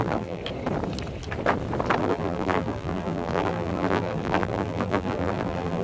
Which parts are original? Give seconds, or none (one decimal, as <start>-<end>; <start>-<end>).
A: 0.4-2.0

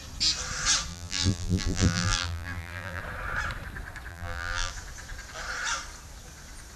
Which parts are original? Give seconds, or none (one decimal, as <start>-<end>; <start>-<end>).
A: 0.0-0.9; 3.0-4.1; 4.7-6.8

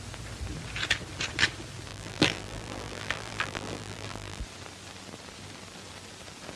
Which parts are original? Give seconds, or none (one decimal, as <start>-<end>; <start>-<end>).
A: 0.0-1.9; 4.4-6.6

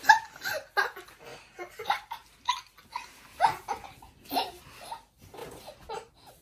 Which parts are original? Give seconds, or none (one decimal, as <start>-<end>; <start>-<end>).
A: 0.0-6.4